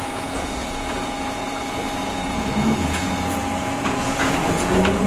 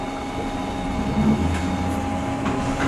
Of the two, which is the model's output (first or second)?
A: first